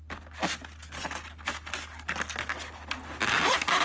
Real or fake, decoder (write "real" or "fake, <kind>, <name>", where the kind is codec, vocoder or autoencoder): real